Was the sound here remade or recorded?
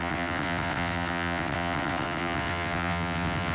remade